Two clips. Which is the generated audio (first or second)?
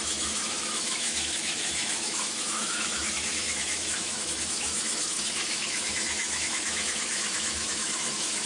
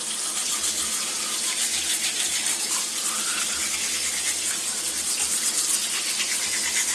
first